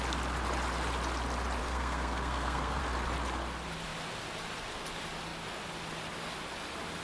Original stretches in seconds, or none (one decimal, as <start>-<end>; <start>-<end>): 0.0-1.6; 2.8-7.0